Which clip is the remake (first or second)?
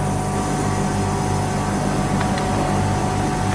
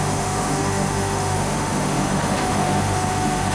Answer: second